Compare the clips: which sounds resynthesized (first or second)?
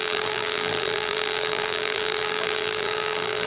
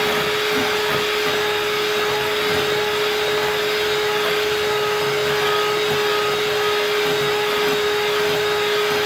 first